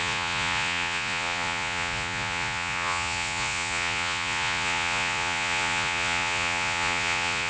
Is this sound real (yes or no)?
no